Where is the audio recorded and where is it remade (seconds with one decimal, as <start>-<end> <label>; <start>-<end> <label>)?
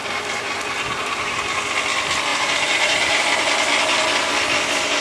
0.0-1.4 remade; 1.4-2.3 recorded; 2.3-3.2 remade; 3.2-5.0 recorded